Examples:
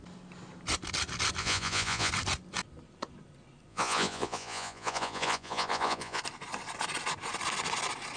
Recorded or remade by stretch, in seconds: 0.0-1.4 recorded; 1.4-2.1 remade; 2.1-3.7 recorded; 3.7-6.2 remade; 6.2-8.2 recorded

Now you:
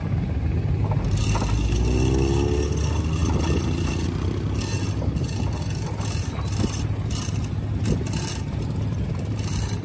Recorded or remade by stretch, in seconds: 0.0-9.8 recorded

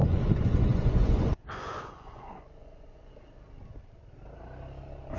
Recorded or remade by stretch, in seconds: 0.0-3.1 remade; 3.1-5.2 recorded

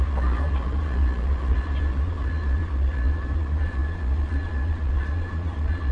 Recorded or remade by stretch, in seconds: 0.0-5.9 remade

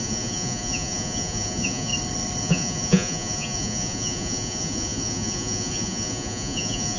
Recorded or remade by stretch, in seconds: 0.0-1.9 remade; 1.9-2.4 recorded; 2.4-7.0 remade

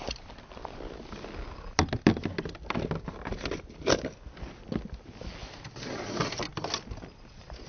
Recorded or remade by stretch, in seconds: 0.0-7.7 recorded

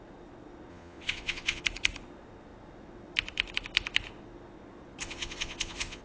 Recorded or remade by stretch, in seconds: 0.0-0.7 recorded; 0.7-1.6 remade; 1.6-5.0 recorded; 5.0-6.0 remade

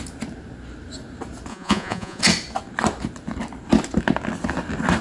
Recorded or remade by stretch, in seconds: 0.0-1.5 recorded; 1.5-2.2 remade; 2.2-5.0 recorded